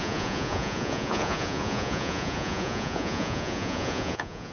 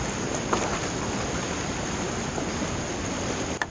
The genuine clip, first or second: second